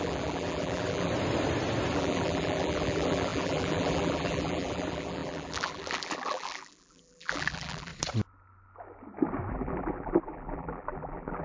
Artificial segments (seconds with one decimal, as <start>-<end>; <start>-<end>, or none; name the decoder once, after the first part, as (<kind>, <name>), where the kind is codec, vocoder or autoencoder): 0.0-1.1 (vocoder, BigVGAN v2); 1.9-7.9; 9.5-11.4